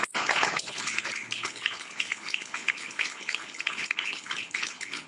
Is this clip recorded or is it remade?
remade